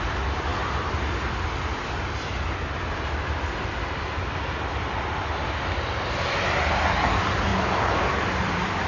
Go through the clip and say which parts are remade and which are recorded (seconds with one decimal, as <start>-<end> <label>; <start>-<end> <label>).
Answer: 0.0-0.5 remade; 0.5-4.9 recorded; 4.9-8.9 remade